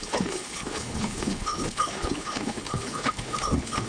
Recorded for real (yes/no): no